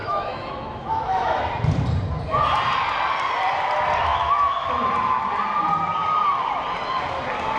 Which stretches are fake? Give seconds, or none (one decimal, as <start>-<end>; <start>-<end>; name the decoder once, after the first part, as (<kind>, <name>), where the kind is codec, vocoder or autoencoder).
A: 0.0-1.4 (autoencoder, DAC-VAE); 4.1-4.7

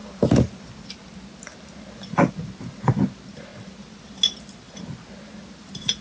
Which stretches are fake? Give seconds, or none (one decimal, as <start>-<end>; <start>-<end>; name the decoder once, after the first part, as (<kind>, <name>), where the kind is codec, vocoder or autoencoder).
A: none

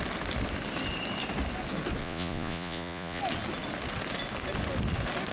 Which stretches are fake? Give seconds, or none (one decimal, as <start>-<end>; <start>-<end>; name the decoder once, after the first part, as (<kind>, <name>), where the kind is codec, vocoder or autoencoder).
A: 2.0-3.2 (vocoder, Vocos)